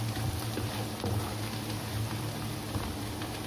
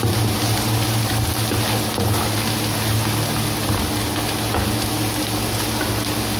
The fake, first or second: first